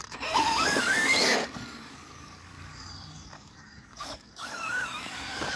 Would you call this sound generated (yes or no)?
yes